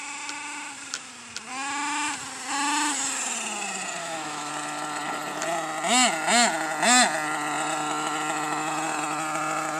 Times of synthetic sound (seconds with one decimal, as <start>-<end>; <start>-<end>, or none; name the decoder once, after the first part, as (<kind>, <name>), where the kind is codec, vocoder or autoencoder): 4.0-4.5 (autoencoder, DAC-VAE)